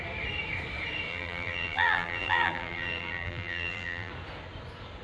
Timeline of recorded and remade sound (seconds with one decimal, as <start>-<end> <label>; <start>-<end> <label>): 0.0-1.1 recorded; 1.1-4.1 remade; 4.1-5.0 recorded